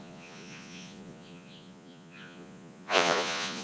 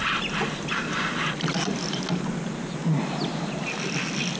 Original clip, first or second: second